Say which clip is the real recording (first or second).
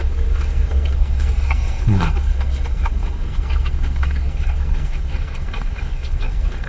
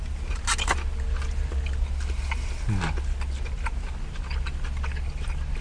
second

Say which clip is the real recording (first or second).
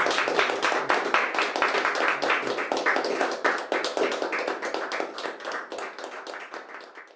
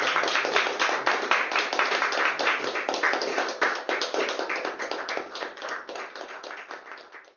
first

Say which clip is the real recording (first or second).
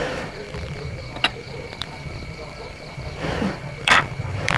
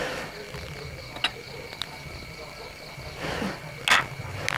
second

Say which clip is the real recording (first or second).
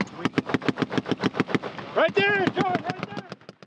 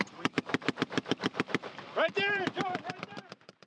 first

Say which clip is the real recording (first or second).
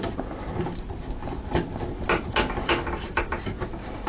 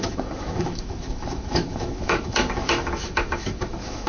first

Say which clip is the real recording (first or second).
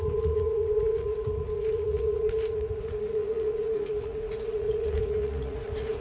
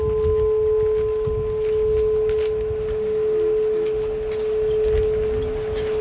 second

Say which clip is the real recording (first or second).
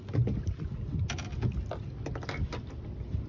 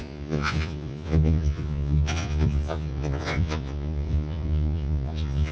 first